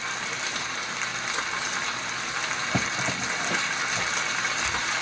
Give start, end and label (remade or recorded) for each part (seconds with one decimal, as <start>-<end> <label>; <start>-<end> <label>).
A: 0.0-5.0 recorded